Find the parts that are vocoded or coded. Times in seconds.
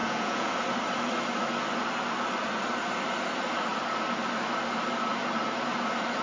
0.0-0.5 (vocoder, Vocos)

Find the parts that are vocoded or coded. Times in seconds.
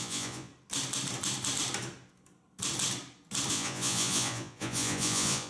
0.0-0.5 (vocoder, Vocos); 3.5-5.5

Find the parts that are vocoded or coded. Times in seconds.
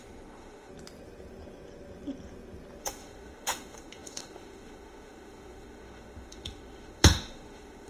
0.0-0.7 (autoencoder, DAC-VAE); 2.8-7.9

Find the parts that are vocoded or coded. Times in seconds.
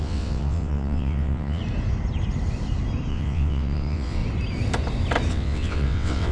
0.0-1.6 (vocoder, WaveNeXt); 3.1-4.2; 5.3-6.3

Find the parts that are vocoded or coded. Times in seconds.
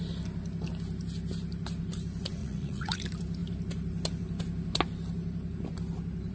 2.4-3.0 (vocoder, Vocos)